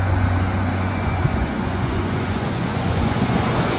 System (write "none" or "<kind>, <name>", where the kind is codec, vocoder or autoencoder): vocoder, Vocos